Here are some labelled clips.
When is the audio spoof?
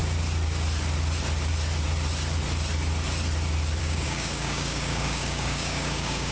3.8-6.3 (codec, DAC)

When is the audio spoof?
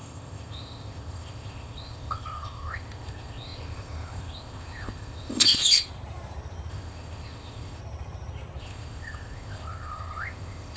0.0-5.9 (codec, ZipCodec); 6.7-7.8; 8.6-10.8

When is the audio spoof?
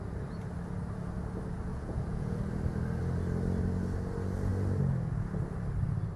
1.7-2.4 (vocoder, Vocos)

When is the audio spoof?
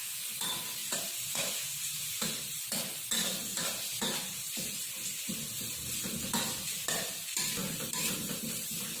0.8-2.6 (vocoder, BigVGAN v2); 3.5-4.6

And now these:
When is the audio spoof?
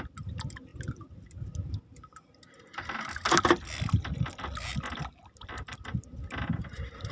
none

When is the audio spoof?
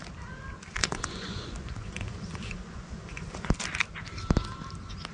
0.8-3.5 (vocoder, Vocos)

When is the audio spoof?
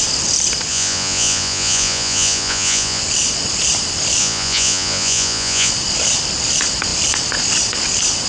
0.7-3.0 (vocoder, Vocos); 4.2-5.7